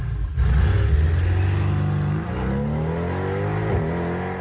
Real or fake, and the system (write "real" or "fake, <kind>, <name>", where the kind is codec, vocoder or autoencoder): real